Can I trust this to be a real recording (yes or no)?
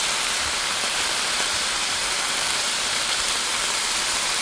no